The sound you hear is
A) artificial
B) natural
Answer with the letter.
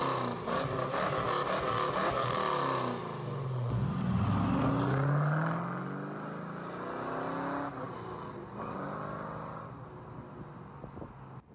B